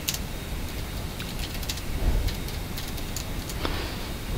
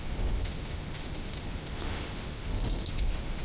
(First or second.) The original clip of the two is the first